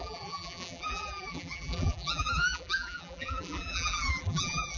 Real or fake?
fake